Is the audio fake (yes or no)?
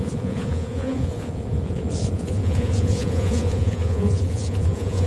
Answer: yes